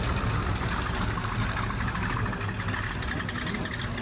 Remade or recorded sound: recorded